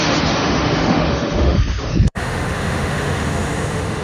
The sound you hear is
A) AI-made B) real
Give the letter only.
A